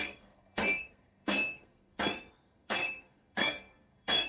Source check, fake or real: fake